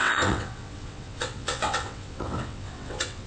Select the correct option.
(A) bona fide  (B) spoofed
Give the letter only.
B